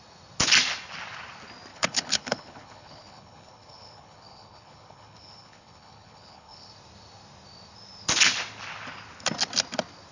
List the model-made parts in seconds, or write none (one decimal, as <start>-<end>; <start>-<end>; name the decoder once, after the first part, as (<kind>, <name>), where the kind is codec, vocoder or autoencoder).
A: 1.7-6.7 (codec, HILCodec)